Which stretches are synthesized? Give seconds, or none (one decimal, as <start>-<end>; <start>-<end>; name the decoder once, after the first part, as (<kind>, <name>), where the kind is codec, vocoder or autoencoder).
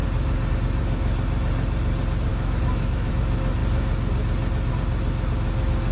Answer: 2.3-3.1 (autoencoder, DAC-VAE)